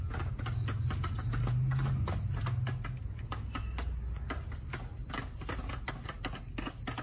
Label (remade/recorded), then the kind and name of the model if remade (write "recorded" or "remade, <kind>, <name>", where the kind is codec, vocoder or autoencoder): recorded